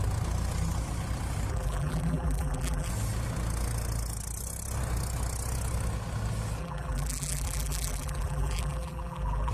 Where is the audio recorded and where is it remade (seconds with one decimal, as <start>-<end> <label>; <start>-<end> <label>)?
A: 0.0-1.5 recorded; 1.5-2.9 remade; 2.9-6.6 recorded; 6.6-9.5 remade